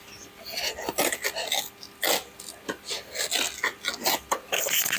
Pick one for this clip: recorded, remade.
recorded